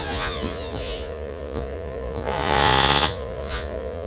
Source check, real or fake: fake